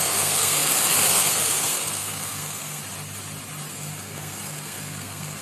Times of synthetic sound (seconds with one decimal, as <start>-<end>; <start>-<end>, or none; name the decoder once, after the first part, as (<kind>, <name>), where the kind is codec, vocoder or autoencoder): 0.0-2.8 (codec, SNAC); 3.7-5.4